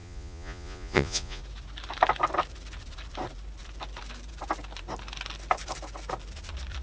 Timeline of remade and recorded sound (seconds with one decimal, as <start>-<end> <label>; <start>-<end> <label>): 0.0-1.4 remade; 1.4-6.8 recorded

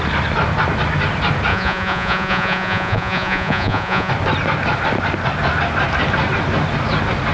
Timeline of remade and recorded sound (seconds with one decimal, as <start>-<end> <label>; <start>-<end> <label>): 0.0-1.5 recorded; 1.5-4.1 remade; 4.1-7.3 recorded